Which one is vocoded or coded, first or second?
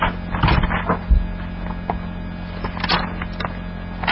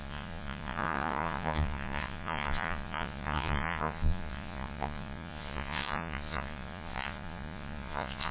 second